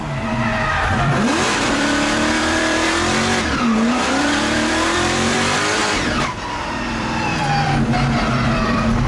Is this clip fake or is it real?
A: fake